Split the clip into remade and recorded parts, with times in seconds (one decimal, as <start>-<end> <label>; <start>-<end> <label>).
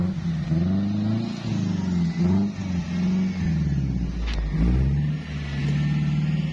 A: 0.0-6.5 recorded